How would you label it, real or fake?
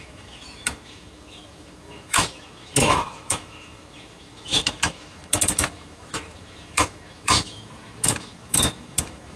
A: fake